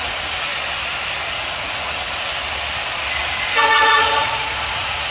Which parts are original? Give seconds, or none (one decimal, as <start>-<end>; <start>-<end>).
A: 0.5-1.3; 2.3-3.3